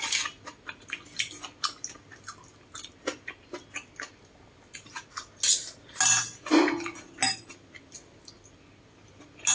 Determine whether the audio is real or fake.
real